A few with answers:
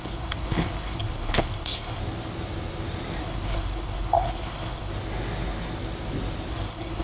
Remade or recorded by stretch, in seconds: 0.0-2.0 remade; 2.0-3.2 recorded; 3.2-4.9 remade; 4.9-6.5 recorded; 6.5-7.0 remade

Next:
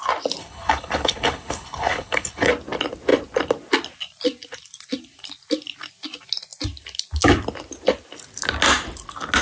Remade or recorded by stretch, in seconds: 0.0-0.4 recorded; 0.4-2.5 remade; 2.5-9.4 recorded

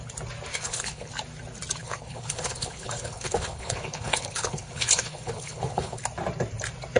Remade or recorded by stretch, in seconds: 0.0-0.5 recorded; 0.5-1.1 remade; 1.1-1.8 recorded; 1.8-6.0 remade; 6.0-7.0 recorded

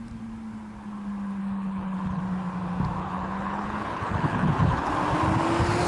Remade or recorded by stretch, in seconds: 0.0-1.4 recorded; 1.4-2.2 remade; 2.2-3.0 recorded; 3.0-4.9 remade; 4.9-5.9 recorded

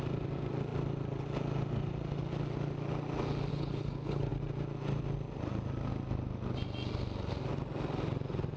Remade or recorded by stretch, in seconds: 0.0-3.5 recorded; 3.5-4.3 remade; 4.3-8.6 recorded